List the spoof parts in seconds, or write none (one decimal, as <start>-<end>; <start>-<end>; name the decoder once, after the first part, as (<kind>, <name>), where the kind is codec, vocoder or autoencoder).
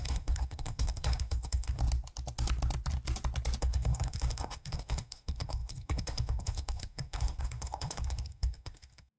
0.0-1.8 (codec, SNAC); 3.6-9.2